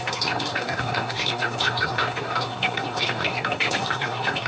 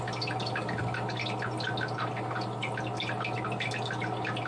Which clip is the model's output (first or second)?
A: first